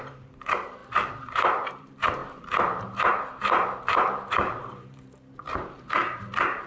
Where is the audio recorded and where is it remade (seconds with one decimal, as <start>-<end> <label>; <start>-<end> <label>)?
0.0-6.7 remade